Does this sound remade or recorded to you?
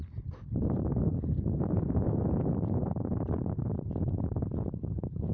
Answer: recorded